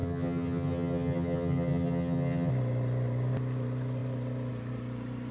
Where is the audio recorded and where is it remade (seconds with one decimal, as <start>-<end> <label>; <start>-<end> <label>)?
0.0-2.5 remade; 2.5-5.3 recorded